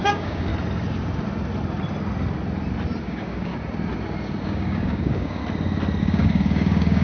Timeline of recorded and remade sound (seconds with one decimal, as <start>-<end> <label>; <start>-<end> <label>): 0.0-0.5 remade; 0.5-3.0 recorded; 3.0-3.5 remade; 3.5-4.4 recorded; 4.4-5.4 remade; 5.4-6.0 recorded; 6.0-7.0 remade